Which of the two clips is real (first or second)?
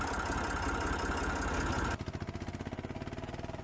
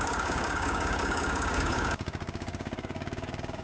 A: first